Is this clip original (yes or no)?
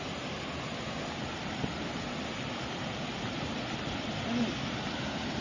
yes